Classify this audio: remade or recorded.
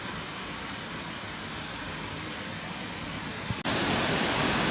recorded